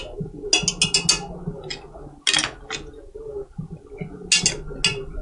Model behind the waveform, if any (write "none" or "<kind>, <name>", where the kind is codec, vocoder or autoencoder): none